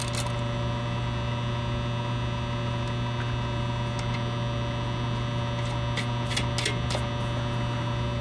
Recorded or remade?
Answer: recorded